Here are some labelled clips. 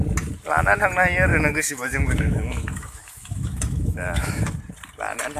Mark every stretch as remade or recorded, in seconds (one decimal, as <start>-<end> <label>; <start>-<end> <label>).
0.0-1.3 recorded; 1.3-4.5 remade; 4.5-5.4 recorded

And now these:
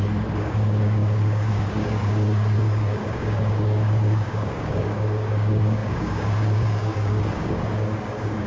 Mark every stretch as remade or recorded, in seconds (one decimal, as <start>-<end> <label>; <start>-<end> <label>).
0.0-8.5 remade

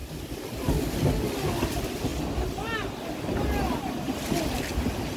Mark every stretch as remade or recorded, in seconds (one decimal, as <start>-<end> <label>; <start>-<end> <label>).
0.0-5.2 recorded

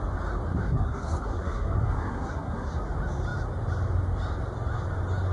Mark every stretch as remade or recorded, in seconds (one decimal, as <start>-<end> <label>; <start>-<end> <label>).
0.0-0.6 recorded; 0.6-2.7 remade; 2.7-5.3 recorded

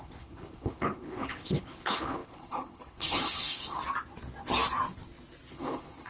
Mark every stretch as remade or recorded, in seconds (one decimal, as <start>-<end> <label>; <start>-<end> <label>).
0.0-3.8 remade; 3.8-5.5 recorded; 5.5-6.1 remade